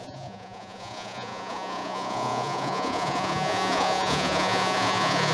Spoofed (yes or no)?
yes